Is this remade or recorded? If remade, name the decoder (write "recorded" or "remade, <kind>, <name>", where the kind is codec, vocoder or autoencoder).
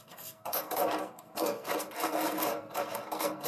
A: remade, codec, SNAC